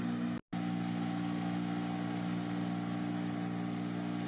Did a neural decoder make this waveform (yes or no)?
no